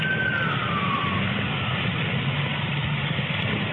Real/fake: fake